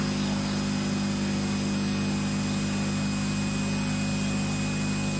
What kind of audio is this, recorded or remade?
recorded